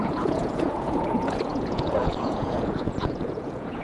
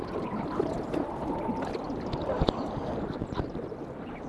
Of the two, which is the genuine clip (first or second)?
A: second